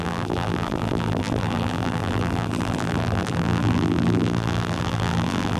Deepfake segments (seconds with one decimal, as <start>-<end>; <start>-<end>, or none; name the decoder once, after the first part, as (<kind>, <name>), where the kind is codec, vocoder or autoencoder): 0.0-5.6 (vocoder, BigVGAN v2)